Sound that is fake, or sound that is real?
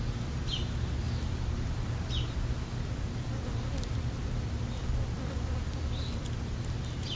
real